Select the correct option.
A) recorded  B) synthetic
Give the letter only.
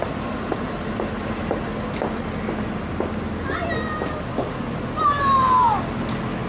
A